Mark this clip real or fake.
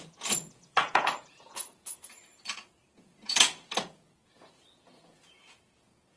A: fake